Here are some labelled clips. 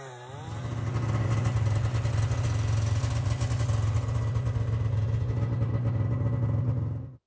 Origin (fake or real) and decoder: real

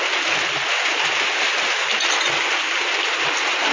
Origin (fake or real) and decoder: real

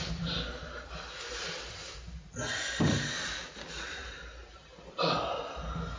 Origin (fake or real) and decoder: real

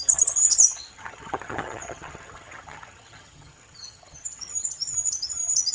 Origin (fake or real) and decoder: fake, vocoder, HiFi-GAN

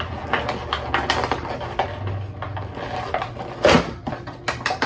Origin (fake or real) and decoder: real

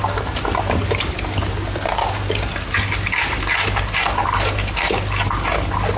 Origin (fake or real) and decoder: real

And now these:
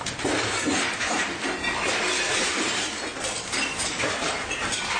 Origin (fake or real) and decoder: real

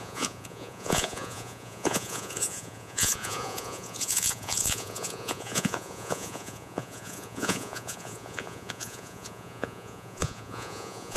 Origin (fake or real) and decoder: fake, vocoder, Vocos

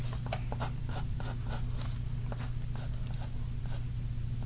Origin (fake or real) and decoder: real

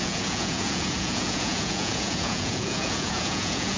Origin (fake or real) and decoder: fake, vocoder, Vocos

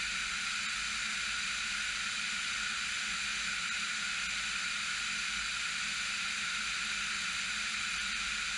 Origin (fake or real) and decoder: real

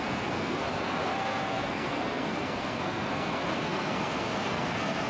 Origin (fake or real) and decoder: fake, codec, SNAC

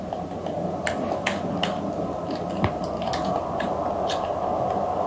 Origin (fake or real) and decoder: real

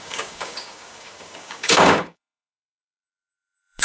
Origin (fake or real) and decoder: fake, codec, DAC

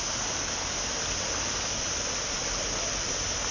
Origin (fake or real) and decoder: real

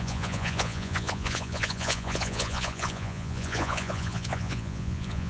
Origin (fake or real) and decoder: fake, vocoder, Vocos